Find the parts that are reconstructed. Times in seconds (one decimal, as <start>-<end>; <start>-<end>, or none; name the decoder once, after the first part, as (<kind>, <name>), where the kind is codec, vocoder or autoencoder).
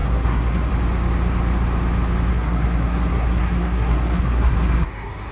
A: 0.0-0.7 (codec, SNAC); 2.3-5.3